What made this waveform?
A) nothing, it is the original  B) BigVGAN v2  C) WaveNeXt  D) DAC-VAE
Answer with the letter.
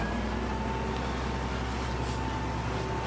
A